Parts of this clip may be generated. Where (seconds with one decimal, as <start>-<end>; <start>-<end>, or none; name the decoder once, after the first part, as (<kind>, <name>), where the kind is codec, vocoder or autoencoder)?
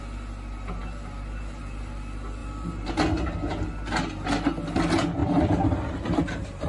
2.4-2.9 (vocoder, BigVGAN v2); 5.2-6.7